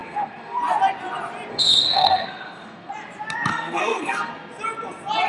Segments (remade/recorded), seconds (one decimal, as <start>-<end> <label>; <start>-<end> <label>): 0.0-0.6 remade; 0.6-1.5 recorded; 1.5-2.9 remade; 2.9-3.5 recorded; 3.5-4.3 remade; 4.3-5.3 recorded